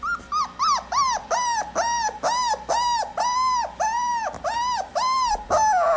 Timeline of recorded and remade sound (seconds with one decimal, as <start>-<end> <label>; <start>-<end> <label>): 0.0-6.0 recorded